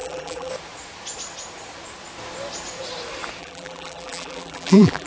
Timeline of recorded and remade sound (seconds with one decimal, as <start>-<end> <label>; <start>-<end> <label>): 0.0-0.5 remade; 0.5-3.4 recorded; 3.4-5.1 remade